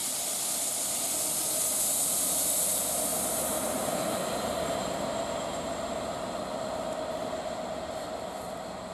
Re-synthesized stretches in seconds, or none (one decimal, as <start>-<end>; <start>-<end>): 3.1-7.0